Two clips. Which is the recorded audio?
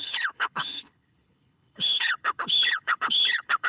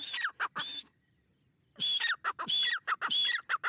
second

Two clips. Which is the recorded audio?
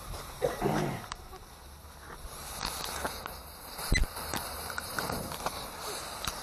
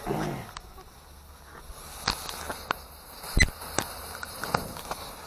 second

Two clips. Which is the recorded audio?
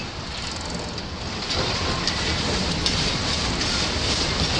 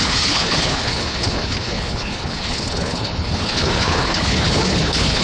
first